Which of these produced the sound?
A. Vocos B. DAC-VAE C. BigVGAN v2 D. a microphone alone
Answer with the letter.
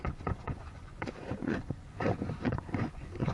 A